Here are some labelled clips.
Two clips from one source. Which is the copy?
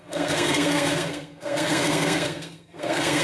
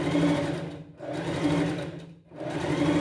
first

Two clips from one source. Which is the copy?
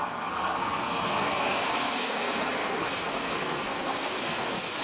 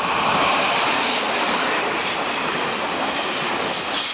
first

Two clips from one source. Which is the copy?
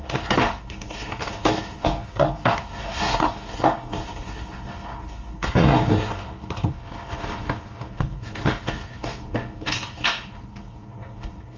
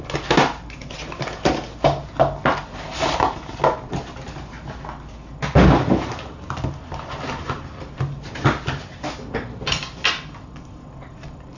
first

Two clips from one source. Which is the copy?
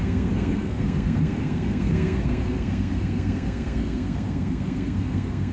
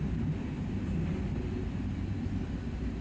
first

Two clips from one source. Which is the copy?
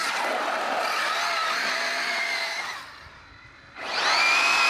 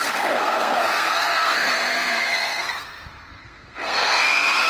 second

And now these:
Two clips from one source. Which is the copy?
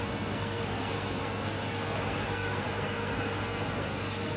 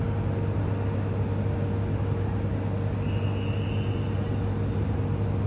first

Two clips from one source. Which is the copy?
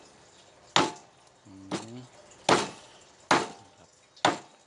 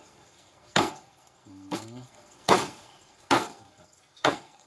second